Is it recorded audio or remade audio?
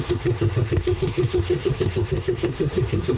remade